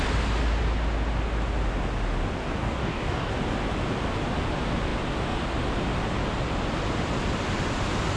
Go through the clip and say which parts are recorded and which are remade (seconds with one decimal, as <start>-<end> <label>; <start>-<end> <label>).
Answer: 0.0-2.6 recorded; 2.6-3.3 remade; 3.3-8.2 recorded